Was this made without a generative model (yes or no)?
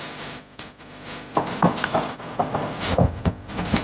yes